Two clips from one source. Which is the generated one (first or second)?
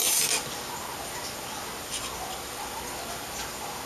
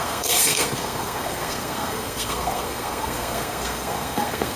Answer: second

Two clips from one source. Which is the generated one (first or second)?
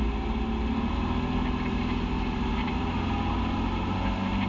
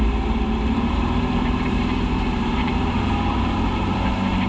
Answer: second